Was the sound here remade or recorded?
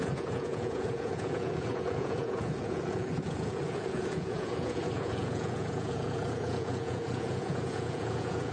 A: remade